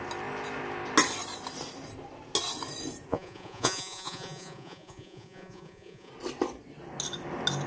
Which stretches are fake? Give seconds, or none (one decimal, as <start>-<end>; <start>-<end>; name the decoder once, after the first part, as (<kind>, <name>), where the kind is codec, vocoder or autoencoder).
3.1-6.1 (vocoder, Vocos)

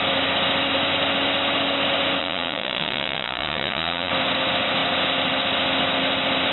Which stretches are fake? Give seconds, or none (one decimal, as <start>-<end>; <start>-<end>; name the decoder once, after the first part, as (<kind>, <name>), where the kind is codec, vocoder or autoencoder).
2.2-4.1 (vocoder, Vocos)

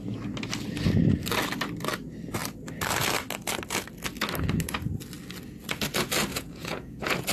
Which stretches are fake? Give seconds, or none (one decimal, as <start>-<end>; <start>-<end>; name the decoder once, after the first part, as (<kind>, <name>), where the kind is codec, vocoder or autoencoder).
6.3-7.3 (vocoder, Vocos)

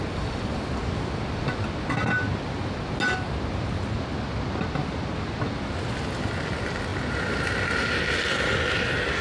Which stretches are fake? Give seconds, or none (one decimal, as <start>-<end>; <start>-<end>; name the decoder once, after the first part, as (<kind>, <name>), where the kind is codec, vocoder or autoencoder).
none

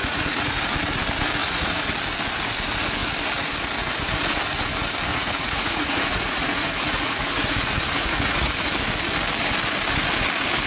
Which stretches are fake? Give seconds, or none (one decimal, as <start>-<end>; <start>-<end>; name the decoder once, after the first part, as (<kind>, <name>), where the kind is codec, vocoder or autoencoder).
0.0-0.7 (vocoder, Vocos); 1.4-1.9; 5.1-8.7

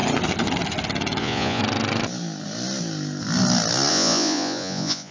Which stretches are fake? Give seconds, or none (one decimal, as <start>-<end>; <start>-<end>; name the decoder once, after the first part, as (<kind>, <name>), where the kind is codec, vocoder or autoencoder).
1.2-1.6 (vocoder, Vocos); 3.9-5.1